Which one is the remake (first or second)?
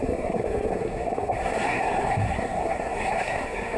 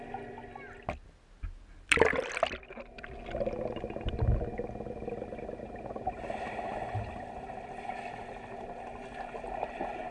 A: first